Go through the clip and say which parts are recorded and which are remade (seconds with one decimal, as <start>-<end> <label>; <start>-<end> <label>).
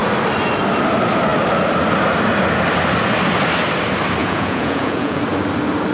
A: 0.0-4.2 recorded; 4.2-5.2 remade; 5.2-5.9 recorded